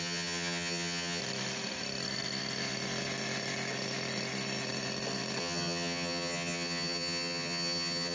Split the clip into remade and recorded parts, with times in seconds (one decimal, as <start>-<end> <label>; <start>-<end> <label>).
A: 0.0-1.2 remade; 1.2-5.4 recorded; 5.4-8.1 remade